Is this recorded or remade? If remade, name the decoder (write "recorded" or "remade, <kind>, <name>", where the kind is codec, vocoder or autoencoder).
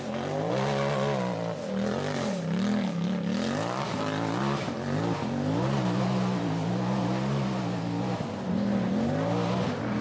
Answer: recorded